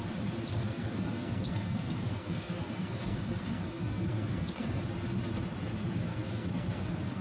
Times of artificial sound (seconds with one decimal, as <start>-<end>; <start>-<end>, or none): 0.5-4.8; 6.1-7.2